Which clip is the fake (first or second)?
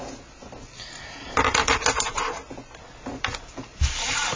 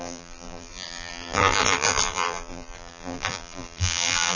second